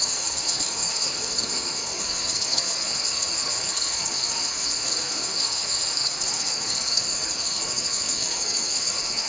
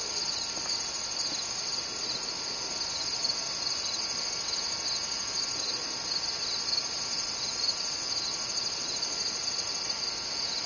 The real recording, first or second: second